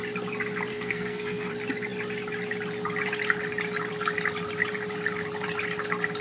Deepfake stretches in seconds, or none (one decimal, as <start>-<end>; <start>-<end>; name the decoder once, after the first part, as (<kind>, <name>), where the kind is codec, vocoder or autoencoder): 0.7-1.5 (codec, SNAC)